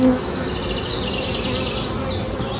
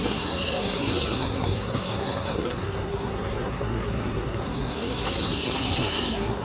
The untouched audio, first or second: first